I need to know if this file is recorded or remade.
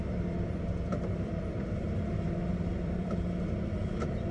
remade